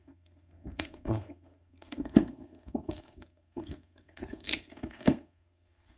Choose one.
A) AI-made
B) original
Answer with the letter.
A